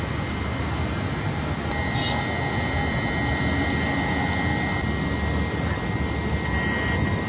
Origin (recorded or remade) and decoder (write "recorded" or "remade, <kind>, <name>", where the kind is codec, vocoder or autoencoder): recorded